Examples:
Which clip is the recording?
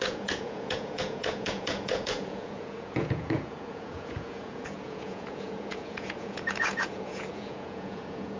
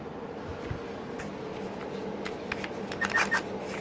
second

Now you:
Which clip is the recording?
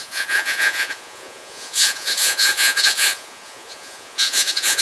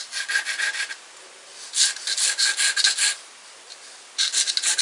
second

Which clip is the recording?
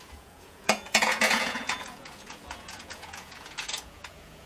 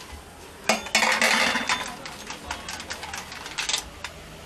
second